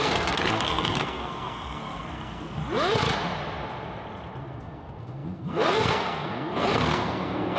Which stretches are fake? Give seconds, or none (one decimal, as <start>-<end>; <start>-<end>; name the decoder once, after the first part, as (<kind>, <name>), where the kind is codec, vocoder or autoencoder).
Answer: 0.0-2.6 (codec, SNAC); 4.4-7.6